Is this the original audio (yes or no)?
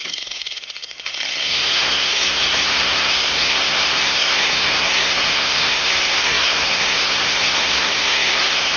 no